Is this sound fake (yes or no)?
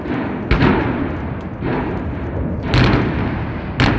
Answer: no